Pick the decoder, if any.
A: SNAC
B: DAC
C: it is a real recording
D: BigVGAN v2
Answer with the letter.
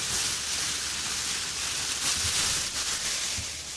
C